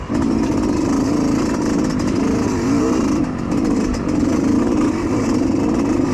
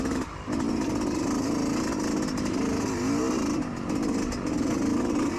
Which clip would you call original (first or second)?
second